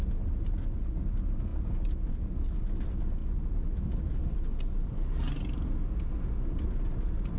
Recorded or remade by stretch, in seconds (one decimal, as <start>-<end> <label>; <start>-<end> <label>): 0.0-7.4 recorded